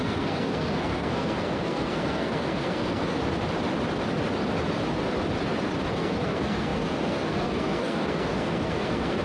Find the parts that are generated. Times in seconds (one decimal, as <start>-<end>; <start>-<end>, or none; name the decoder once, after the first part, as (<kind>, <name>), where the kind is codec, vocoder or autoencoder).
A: 0.0-3.2 (codec, SNAC); 5.9-9.2